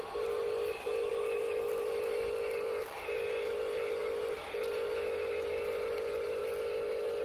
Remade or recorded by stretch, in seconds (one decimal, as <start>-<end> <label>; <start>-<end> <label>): 0.0-7.2 recorded